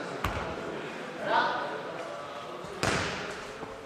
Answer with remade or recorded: recorded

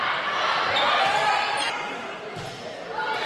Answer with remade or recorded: recorded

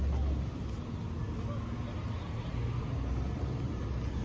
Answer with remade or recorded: recorded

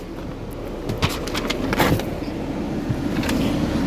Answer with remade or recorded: recorded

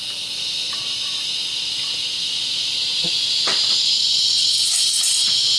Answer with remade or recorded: recorded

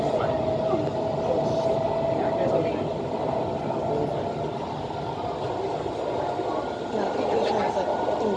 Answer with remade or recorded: recorded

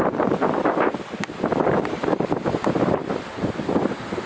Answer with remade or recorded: remade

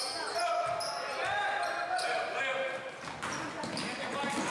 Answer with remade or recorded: recorded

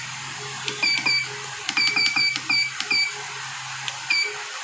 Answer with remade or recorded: recorded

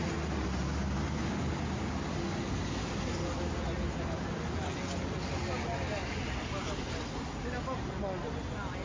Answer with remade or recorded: recorded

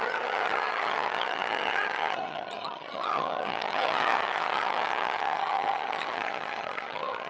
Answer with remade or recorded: remade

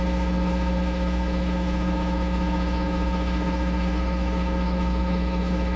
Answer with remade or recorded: remade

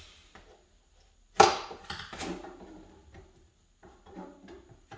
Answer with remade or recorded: recorded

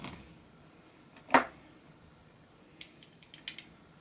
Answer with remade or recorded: recorded